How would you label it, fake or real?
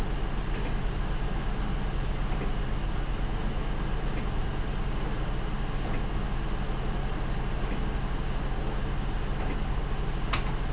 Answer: real